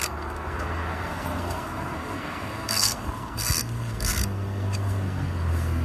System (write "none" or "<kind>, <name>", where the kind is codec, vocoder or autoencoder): codec, SNAC